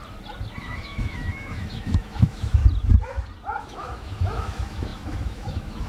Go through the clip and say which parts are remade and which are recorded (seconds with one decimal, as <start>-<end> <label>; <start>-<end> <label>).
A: 0.0-0.6 recorded; 0.6-2.6 remade; 2.6-3.6 recorded; 3.6-5.9 remade